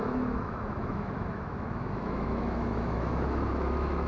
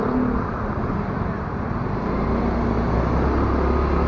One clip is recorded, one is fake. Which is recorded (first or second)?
second